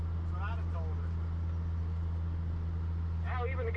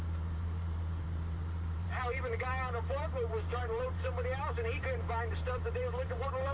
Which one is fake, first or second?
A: second